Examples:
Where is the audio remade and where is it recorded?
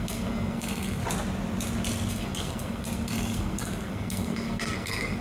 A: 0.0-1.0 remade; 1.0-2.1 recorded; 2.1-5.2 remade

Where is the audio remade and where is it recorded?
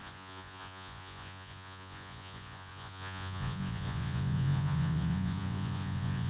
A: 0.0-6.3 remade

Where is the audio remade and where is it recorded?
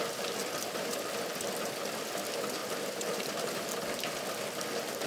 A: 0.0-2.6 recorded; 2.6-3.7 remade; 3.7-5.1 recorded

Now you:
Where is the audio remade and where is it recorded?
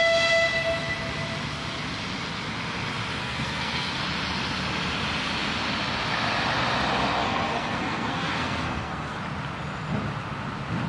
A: 0.0-3.2 recorded; 3.2-4.0 remade; 4.0-7.2 recorded; 7.2-9.2 remade; 9.2-10.9 recorded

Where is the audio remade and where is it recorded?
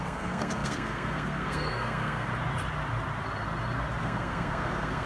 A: 0.0-2.3 remade; 2.3-4.0 recorded; 4.0-5.1 remade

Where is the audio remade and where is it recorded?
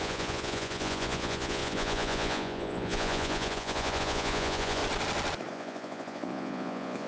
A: 0.0-4.8 remade; 4.8-5.5 recorded; 5.5-7.1 remade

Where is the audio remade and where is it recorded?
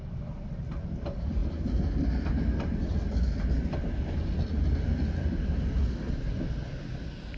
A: 0.0-7.4 recorded